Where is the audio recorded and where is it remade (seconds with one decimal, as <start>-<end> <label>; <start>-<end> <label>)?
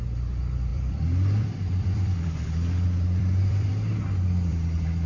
0.0-0.7 recorded; 0.7-3.7 remade; 3.7-4.5 recorded; 4.5-5.1 remade